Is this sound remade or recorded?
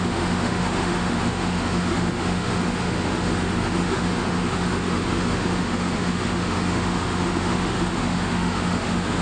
remade